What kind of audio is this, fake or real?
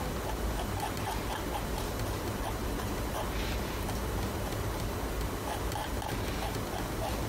real